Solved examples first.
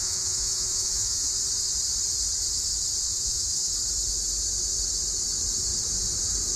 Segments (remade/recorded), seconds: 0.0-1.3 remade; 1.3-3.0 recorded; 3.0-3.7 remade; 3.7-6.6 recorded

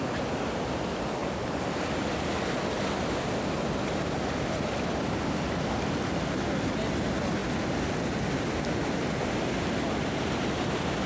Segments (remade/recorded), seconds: 0.0-11.1 recorded

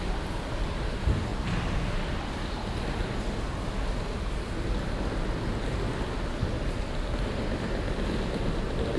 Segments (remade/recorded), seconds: 0.0-9.0 recorded

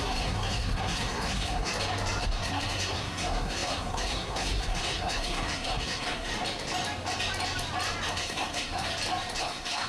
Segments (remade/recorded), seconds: 0.0-1.7 remade; 1.7-2.2 recorded; 2.2-6.3 remade; 6.3-8.1 recorded; 8.1-8.9 remade; 8.9-9.4 recorded; 9.4-9.9 remade